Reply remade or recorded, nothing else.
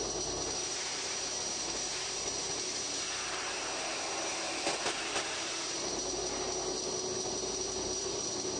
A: recorded